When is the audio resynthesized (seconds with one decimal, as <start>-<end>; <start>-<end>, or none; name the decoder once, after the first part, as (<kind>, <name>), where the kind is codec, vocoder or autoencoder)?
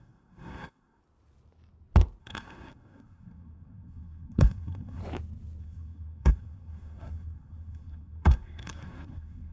0.0-1.0 (codec, SNAC); 2.2-5.0; 5.6-9.5